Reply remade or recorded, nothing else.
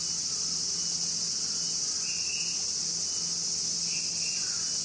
recorded